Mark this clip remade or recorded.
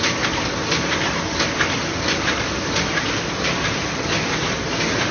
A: remade